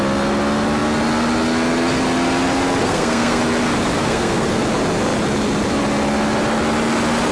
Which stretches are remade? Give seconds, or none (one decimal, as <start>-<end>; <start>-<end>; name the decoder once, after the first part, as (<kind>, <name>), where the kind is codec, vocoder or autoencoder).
2.8-3.4 (codec, SNAC); 4.0-4.6